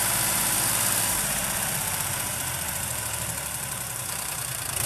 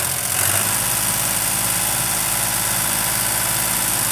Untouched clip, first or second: second